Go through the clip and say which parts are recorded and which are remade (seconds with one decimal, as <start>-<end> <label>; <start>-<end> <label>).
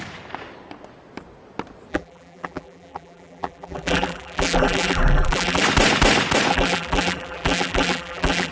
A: 0.0-1.9 recorded; 1.9-5.6 remade; 5.6-6.5 recorded; 6.5-8.5 remade